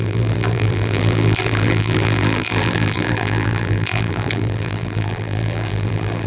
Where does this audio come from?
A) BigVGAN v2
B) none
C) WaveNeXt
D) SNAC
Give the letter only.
A